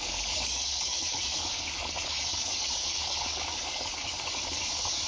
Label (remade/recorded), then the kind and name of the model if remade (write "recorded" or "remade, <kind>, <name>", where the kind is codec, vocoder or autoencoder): remade, codec, DAC